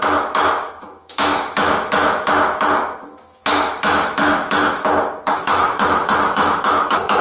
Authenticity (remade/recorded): remade